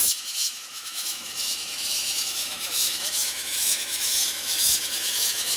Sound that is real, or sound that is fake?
fake